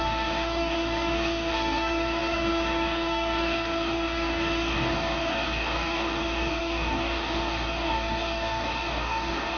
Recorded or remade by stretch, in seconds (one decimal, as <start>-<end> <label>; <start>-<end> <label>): 0.0-9.6 remade